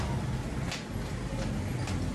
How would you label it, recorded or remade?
recorded